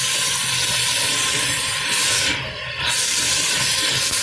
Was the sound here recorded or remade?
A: recorded